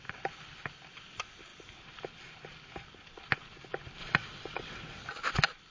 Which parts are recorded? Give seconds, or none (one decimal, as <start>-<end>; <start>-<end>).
0.0-4.0; 5.1-5.7